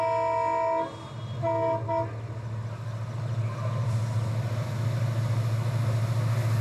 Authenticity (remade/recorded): recorded